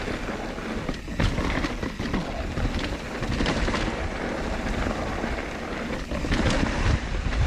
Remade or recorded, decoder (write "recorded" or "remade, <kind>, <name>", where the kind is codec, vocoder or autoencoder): recorded